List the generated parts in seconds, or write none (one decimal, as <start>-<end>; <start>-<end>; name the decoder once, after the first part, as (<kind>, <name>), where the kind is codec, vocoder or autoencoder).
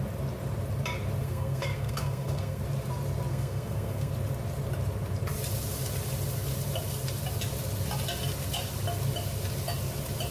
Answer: 1.2-2.6 (codec, SNAC); 3.3-4.1